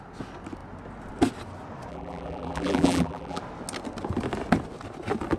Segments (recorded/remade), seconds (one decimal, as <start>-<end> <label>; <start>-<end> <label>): 0.0-1.9 recorded; 1.9-3.4 remade; 3.4-5.4 recorded